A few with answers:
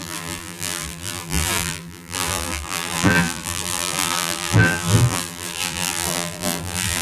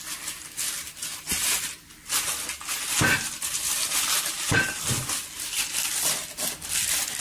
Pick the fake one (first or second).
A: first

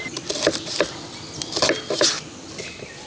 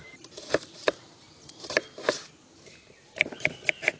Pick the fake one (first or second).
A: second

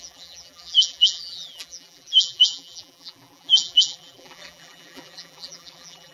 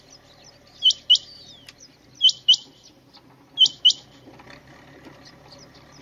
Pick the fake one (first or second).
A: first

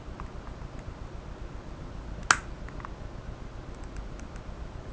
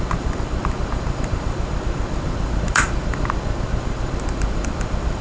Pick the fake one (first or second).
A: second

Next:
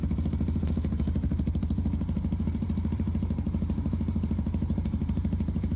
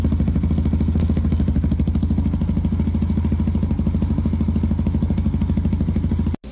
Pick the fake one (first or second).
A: first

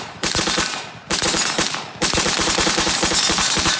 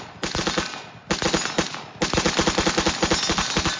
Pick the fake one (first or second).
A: first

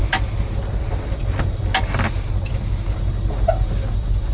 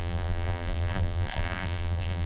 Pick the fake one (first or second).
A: second